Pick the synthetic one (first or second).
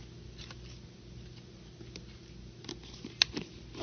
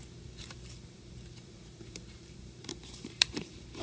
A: second